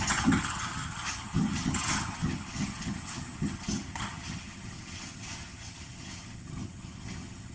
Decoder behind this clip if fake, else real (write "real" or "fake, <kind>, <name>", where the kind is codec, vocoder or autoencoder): fake, vocoder, HiFi-GAN